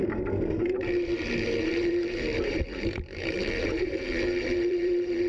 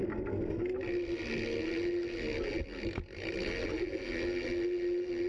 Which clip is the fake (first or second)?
first